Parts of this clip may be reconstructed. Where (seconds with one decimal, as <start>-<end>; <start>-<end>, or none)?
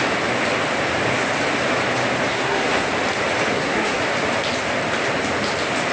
2.3-2.9; 3.5-4.0